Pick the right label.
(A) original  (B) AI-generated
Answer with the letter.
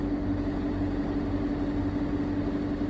A